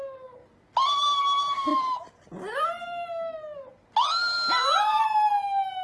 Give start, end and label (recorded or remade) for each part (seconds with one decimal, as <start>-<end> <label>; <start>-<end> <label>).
0.0-5.8 recorded